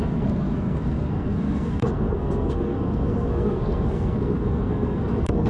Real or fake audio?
fake